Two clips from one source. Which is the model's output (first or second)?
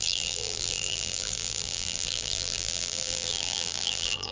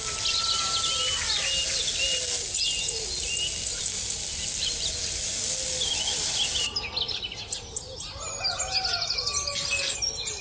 first